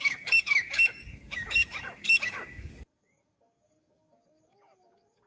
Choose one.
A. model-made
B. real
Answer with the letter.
A